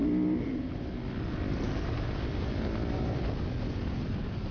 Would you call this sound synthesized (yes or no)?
no